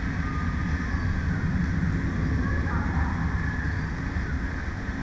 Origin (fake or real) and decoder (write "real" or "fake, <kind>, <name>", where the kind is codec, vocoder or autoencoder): real